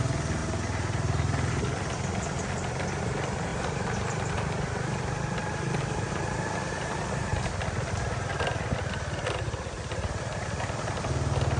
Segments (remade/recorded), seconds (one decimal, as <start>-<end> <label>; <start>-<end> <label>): 0.0-0.4 recorded; 0.4-1.6 remade; 1.6-3.5 recorded; 3.5-6.1 remade; 6.1-11.6 recorded